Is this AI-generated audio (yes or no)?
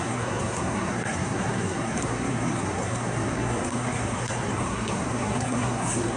yes